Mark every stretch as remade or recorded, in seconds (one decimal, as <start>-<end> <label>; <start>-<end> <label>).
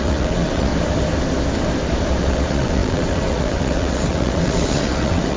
0.0-0.7 remade; 0.7-2.2 recorded; 2.2-5.4 remade